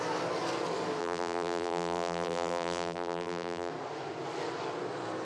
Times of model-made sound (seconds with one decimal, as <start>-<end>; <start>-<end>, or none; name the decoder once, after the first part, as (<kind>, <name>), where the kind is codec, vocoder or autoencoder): 1.0-3.7 (vocoder, BigVGAN v2)